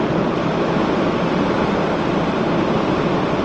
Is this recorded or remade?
recorded